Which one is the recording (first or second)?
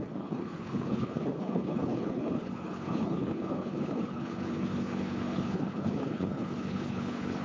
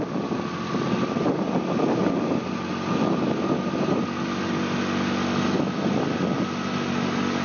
second